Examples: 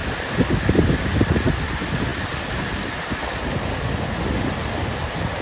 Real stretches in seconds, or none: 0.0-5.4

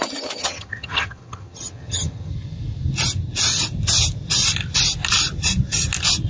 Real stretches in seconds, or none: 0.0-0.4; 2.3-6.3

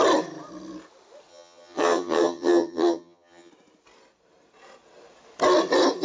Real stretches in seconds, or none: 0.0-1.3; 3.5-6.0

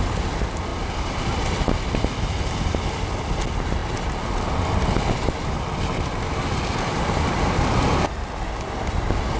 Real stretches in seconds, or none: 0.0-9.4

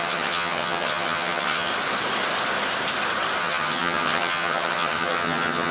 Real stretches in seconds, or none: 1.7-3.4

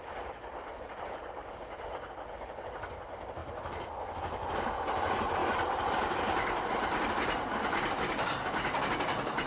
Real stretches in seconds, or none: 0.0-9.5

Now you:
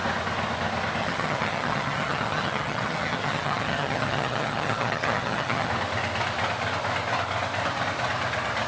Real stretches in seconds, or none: 0.0-1.0; 5.7-8.7